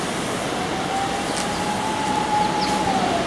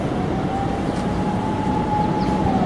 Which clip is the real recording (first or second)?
first